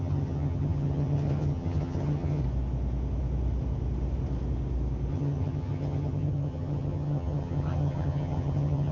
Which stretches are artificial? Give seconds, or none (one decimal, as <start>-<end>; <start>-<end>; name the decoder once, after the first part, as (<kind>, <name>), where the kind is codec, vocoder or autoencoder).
0.0-2.4 (vocoder, HiFi-GAN); 5.1-8.9